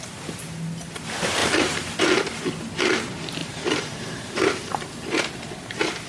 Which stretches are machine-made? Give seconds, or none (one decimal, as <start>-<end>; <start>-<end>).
1.4-2.0; 3.4-5.2